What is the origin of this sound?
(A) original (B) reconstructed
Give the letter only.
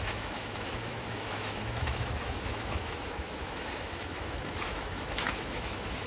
B